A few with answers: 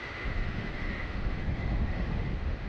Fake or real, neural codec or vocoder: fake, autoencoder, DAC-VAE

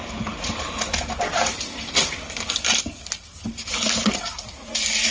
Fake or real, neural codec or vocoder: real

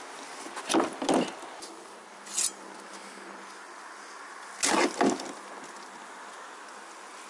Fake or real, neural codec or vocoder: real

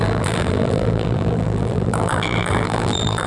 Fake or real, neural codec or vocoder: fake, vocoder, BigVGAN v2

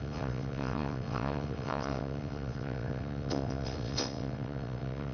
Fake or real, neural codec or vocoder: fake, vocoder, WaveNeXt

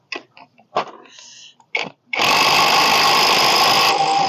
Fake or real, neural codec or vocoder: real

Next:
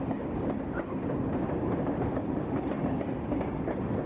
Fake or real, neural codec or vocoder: real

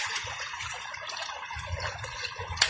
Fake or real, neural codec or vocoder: fake, vocoder, Vocos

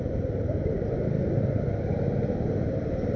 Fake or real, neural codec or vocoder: real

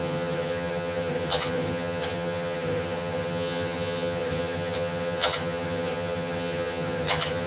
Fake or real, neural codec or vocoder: fake, vocoder, HiFi-GAN